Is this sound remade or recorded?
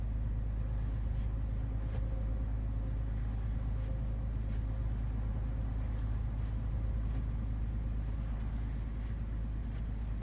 recorded